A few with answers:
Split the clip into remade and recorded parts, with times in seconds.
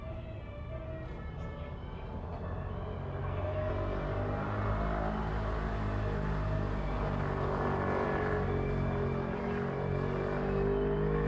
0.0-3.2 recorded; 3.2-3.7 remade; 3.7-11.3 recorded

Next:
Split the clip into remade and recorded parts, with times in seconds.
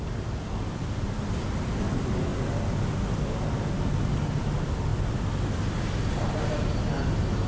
0.0-7.5 recorded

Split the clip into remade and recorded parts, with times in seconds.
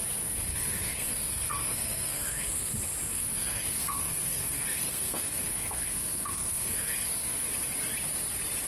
0.0-0.5 recorded; 0.5-2.7 remade; 2.7-3.1 recorded; 3.1-7.5 remade; 7.5-8.7 recorded